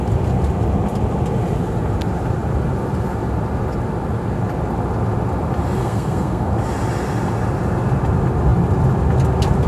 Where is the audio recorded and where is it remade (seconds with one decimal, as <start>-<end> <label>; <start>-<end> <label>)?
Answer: 0.0-5.8 recorded; 5.8-6.5 remade; 6.5-9.7 recorded